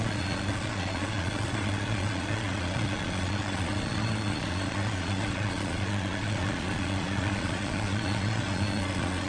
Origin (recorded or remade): remade